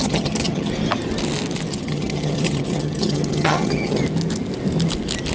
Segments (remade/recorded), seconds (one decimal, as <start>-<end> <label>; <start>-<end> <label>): 0.0-0.7 remade; 0.7-1.7 recorded; 1.7-4.0 remade; 4.0-5.3 recorded